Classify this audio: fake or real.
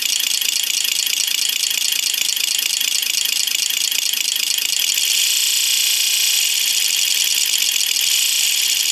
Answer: real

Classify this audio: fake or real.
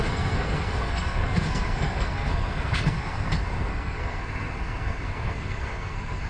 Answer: fake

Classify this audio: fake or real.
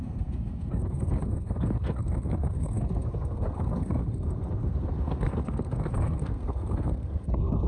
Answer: fake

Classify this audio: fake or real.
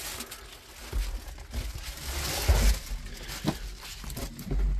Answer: real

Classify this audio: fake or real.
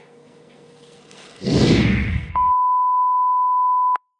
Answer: fake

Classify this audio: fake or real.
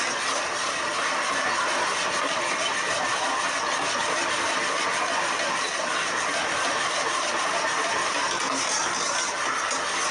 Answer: real